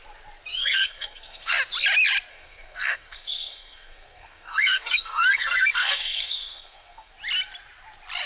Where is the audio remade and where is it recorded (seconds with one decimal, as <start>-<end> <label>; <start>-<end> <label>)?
0.0-0.6 recorded; 0.6-1.5 remade; 1.5-2.3 recorded; 2.3-7.1 remade; 7.1-8.3 recorded